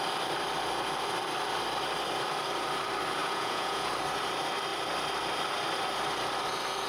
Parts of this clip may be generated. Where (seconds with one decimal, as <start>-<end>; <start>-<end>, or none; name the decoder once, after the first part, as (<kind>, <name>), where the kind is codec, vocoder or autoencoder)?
3.2-3.9 (vocoder, Vocos)